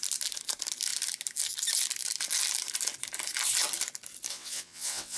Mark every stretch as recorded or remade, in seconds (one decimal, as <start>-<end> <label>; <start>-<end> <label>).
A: 0.0-4.3 recorded; 4.3-5.2 remade